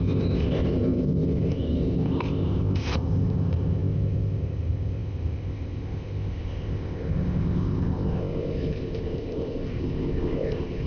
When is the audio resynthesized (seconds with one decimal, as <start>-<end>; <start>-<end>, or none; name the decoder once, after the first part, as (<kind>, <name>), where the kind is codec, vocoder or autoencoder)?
0.0-10.9 (codec, ZipCodec)